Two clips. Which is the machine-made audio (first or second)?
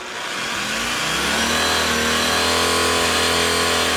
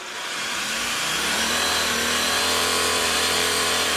second